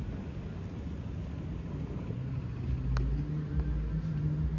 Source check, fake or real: real